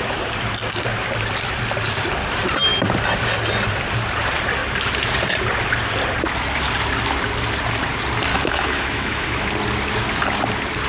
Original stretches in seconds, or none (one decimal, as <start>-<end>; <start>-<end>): 0.0-8.3; 9.5-10.9